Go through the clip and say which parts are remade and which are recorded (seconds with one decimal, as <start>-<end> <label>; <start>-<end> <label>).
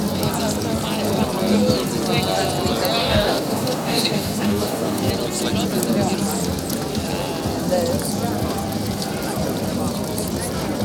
0.0-3.0 recorded; 3.0-5.1 remade; 5.1-10.8 recorded